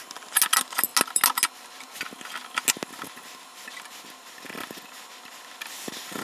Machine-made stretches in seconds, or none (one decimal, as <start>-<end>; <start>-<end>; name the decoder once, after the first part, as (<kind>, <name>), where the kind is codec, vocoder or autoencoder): none